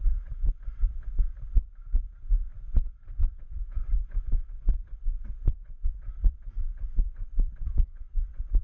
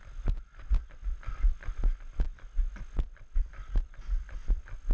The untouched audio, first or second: second